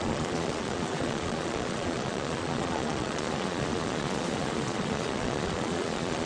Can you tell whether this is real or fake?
fake